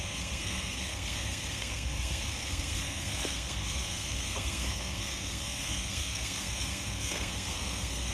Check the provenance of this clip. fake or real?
fake